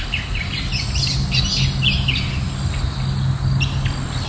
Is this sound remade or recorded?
recorded